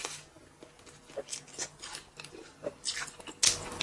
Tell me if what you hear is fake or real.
real